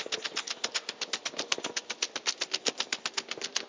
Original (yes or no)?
yes